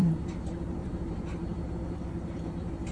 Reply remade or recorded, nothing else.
remade